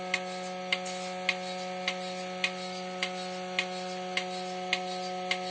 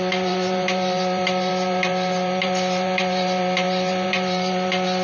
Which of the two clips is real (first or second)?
first